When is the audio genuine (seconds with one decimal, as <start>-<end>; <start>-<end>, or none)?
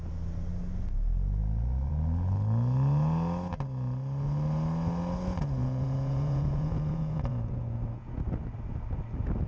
0.0-5.6; 8.2-9.5